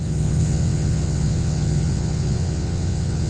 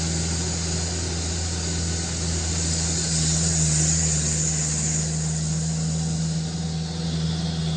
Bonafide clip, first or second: second